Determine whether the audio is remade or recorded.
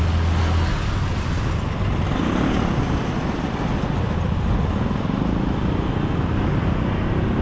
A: recorded